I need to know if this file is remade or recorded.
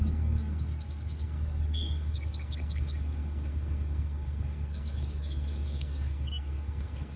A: remade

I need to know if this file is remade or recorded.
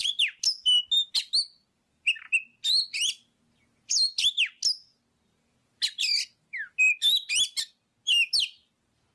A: recorded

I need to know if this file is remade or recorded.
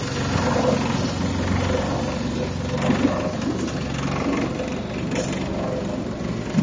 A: recorded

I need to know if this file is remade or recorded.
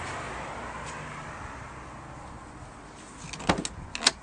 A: recorded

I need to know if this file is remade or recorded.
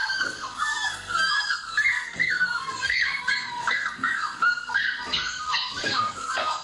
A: remade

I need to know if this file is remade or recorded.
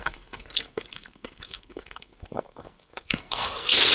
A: remade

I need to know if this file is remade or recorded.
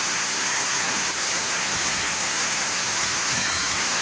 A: remade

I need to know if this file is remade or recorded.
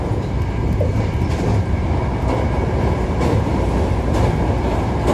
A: recorded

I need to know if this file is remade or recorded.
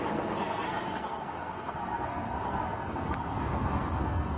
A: remade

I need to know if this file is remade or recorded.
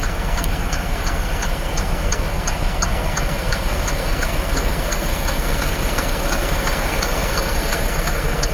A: remade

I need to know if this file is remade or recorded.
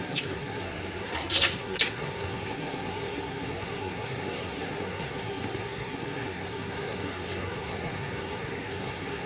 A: remade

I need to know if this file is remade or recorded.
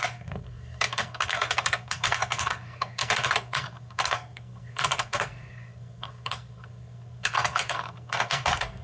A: remade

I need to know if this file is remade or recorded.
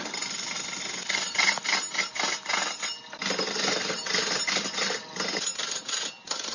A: recorded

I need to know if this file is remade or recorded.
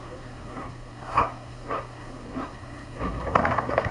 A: remade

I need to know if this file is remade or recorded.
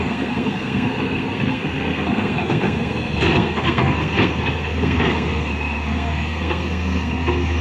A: remade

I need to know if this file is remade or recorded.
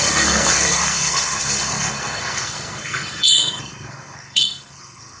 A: remade